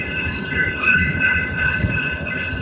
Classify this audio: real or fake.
fake